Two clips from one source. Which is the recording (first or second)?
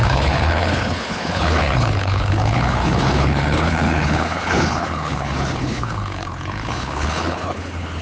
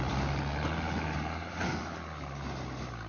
second